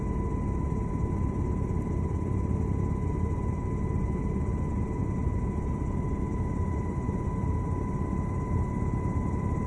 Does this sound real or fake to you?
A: fake